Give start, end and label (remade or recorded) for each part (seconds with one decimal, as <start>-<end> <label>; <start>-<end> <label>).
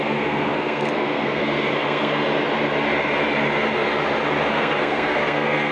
0.0-2.2 remade; 2.2-4.5 recorded; 4.5-5.7 remade